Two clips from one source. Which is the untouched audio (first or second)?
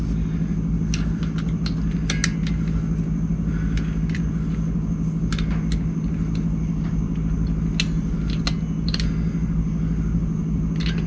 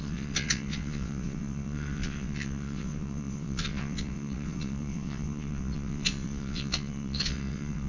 first